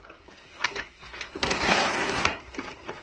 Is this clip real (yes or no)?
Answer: no